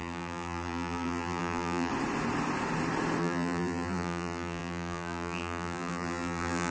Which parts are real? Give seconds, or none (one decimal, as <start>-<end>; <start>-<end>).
1.9-3.2